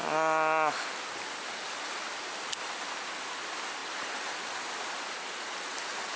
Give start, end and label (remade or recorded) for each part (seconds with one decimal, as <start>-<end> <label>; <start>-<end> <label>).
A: 0.0-6.2 recorded